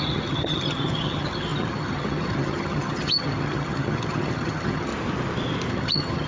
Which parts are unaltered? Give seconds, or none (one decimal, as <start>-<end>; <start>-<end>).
4.9-5.7